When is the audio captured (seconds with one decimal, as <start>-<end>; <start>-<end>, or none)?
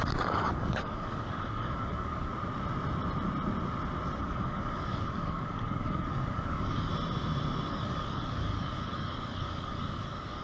2.3-4.2; 6.9-7.7